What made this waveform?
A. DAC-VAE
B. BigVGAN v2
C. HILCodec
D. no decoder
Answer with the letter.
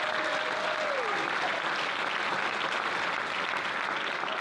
D